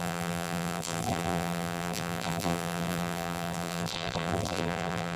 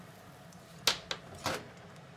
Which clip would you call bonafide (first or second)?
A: second